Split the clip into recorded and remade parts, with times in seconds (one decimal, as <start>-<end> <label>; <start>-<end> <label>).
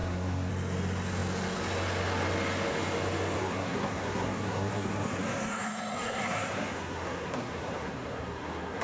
0.0-0.5 remade; 0.5-3.4 recorded; 3.4-8.8 remade